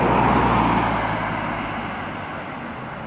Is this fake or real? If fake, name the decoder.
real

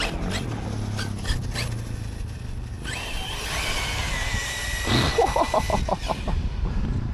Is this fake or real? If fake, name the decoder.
real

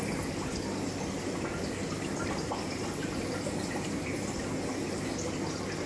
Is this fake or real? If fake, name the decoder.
real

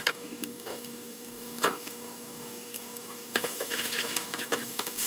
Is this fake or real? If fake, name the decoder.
fake, codec, DAC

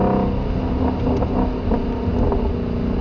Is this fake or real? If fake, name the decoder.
real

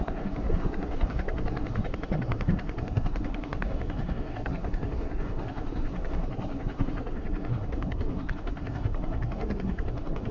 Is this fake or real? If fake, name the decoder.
fake, codec, SNAC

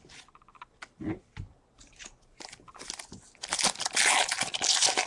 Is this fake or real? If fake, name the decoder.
real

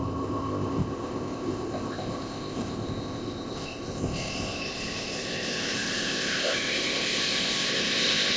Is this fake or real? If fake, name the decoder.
fake, codec, ZipCodec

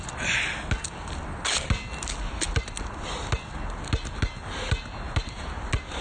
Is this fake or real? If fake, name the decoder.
real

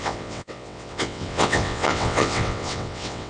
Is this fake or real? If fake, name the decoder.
fake, vocoder, WaveNeXt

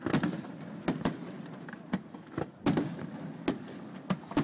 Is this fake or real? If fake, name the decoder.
real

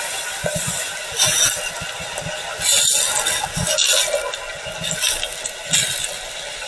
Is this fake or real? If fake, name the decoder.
real